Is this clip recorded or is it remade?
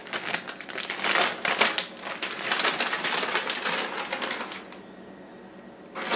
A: recorded